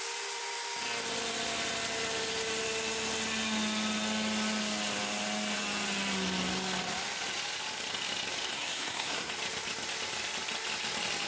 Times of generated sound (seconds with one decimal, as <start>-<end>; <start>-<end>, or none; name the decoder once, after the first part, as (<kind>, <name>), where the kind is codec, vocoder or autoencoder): 8.5-9.3 (codec, SNAC)